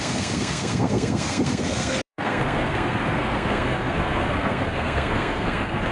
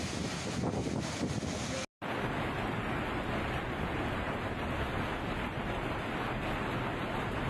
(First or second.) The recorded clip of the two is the second